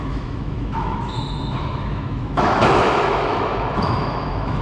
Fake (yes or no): yes